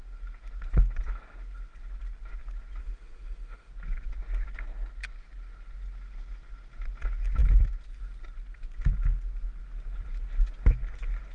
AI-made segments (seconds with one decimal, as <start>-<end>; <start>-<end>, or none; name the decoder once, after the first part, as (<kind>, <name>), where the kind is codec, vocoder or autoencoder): 2.8-3.7 (autoencoder, DAC-VAE)